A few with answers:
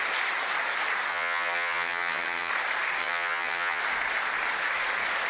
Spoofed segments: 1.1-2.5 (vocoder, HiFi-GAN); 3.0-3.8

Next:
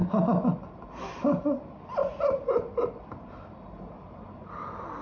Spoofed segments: none

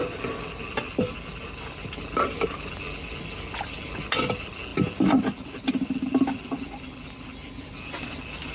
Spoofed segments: none